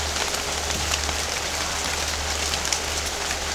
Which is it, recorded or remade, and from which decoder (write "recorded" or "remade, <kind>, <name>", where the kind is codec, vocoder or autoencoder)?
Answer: recorded